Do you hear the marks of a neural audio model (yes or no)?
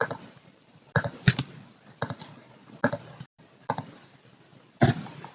no